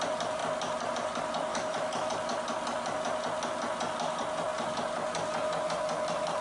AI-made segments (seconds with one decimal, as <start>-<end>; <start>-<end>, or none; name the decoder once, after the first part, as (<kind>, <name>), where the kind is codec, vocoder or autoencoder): 1.5-2.1 (autoencoder, DAC-VAE)